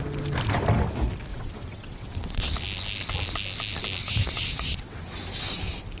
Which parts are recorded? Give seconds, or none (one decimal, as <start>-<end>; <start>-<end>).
0.0-1.3; 2.5-4.0; 5.0-6.0